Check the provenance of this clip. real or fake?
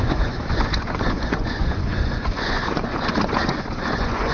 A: fake